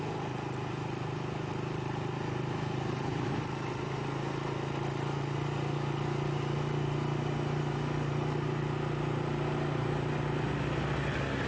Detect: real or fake real